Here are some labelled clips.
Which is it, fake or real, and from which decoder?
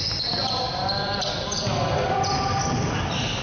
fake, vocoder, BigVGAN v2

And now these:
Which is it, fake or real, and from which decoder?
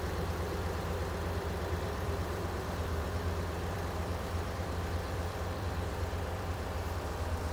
fake, vocoder, BigVGAN v2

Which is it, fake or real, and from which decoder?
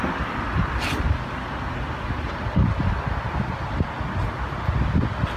real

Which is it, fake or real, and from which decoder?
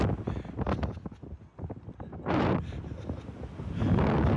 real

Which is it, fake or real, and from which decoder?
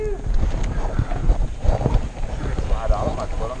real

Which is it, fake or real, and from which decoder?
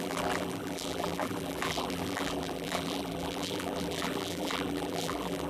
fake, vocoder, BigVGAN v2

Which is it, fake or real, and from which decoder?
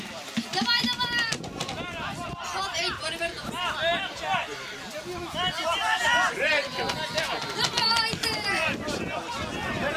real